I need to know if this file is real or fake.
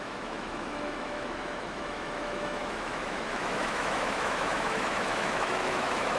fake